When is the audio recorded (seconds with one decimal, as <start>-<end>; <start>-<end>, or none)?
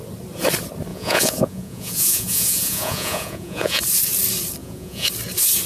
0.0-0.9; 3.8-4.6; 5.1-5.7